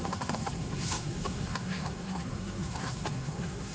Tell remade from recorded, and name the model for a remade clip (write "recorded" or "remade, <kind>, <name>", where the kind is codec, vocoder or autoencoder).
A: remade, codec, SNAC